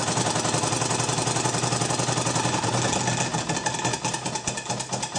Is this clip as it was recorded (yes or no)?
yes